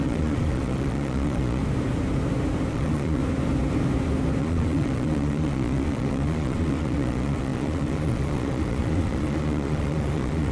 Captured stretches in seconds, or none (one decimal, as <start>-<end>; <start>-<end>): 1.6-2.7; 3.2-4.4